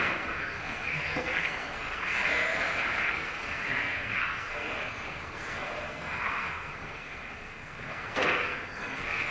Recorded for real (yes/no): no